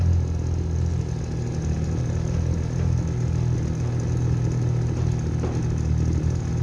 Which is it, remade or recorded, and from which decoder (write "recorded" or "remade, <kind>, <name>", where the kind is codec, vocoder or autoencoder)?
recorded